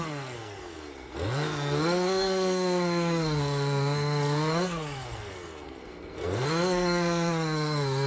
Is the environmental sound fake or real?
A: fake